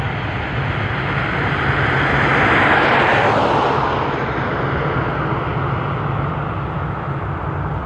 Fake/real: real